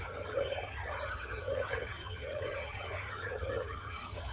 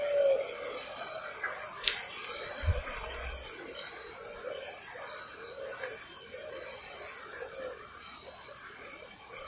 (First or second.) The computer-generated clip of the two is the first